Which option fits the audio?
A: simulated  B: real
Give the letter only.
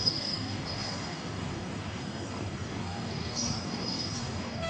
A